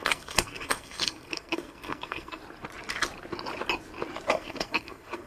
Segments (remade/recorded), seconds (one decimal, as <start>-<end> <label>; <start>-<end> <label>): 0.0-2.4 remade; 2.4-4.3 recorded; 4.3-5.3 remade